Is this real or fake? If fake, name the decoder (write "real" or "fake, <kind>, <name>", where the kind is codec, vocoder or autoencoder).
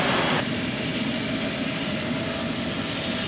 real